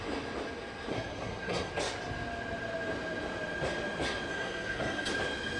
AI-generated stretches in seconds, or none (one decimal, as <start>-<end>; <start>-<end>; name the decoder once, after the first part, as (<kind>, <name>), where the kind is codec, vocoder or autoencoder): 0.9-1.7 (codec, SNAC); 4.3-5.1